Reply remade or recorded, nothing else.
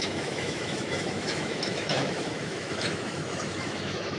remade